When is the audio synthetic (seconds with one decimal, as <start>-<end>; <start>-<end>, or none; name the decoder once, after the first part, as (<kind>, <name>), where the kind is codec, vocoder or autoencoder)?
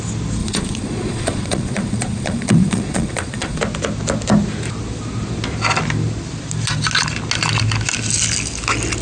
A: 0.4-3.6 (vocoder, Vocos)